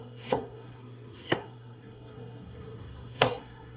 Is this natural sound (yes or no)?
no